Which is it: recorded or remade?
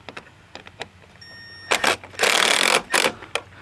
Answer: recorded